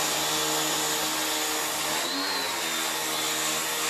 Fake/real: real